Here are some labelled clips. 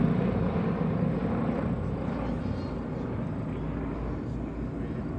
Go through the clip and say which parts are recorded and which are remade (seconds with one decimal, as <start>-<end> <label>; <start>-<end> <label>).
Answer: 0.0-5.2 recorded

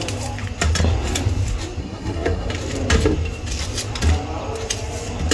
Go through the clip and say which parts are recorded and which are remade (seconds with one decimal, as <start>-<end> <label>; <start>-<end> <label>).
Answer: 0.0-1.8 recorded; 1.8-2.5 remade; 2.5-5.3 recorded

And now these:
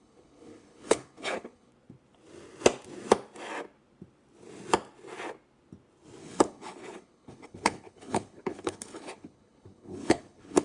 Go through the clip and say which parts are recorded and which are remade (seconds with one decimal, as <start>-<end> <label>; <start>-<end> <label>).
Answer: 0.0-1.7 remade; 1.7-6.2 recorded; 6.2-10.6 remade

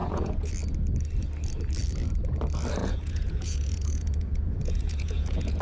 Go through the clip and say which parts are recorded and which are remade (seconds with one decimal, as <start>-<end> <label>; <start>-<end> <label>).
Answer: 0.0-0.5 remade; 0.5-2.8 recorded; 2.8-5.6 remade

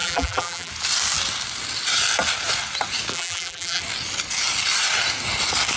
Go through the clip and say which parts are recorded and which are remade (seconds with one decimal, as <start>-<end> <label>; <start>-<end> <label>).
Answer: 0.0-0.7 remade; 0.7-3.1 recorded; 3.1-3.8 remade; 3.8-5.8 recorded